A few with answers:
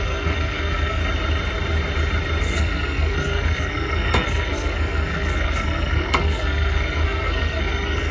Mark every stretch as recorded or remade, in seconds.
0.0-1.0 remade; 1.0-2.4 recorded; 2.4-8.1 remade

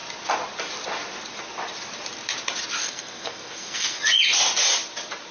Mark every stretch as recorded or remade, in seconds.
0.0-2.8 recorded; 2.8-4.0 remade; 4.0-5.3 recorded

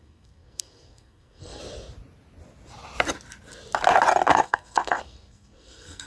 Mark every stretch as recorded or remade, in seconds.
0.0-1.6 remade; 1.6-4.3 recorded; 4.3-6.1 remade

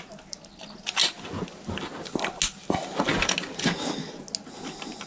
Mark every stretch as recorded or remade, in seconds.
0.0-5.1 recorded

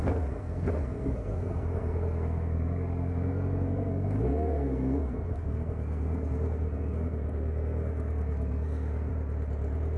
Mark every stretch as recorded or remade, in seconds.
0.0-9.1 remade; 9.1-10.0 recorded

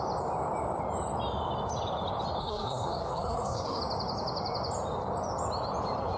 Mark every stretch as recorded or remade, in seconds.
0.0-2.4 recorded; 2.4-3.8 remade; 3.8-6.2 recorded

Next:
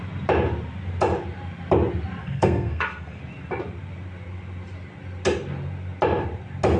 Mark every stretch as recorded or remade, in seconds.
0.0-2.2 recorded; 2.2-3.2 remade; 3.2-6.8 recorded

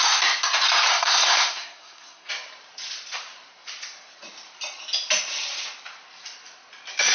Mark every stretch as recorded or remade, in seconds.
0.0-0.9 recorded; 0.9-2.3 remade; 2.3-7.1 recorded